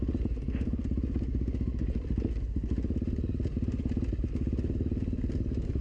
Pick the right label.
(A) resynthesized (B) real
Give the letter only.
B